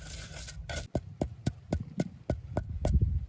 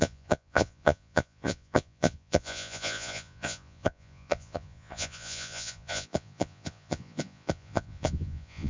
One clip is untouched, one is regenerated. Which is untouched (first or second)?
first